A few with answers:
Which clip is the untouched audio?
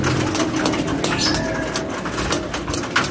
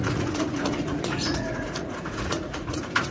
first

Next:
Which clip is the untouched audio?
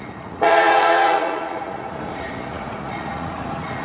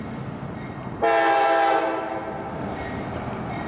second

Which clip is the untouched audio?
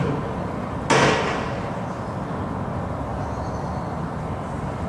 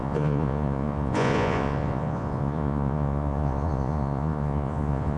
first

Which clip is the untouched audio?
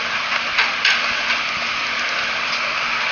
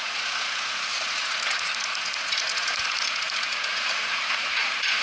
first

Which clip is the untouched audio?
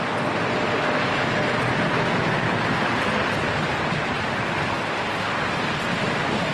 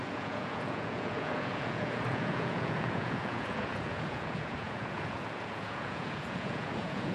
first